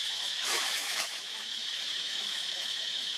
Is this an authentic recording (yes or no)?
no